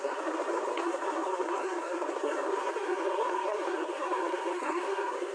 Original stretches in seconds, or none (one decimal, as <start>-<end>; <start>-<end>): none